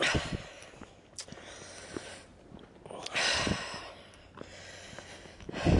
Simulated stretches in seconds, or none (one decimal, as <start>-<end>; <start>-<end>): none